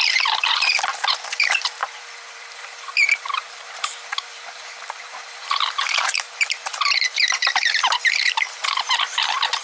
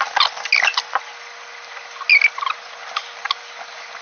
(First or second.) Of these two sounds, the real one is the second